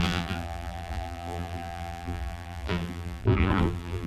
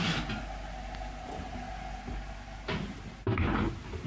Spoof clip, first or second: first